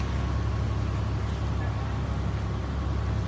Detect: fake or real real